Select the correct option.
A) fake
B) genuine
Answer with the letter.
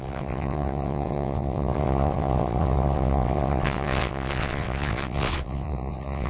A